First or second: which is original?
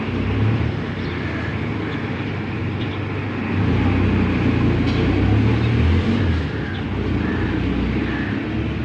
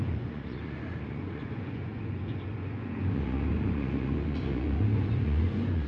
first